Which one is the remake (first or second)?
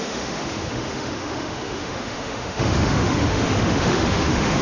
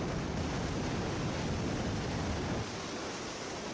first